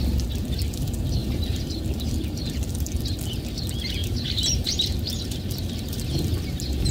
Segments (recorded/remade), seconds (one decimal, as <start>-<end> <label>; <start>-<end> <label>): 0.0-1.2 recorded; 1.2-1.7 remade; 1.7-4.0 recorded; 4.0-6.2 remade; 6.2-6.9 recorded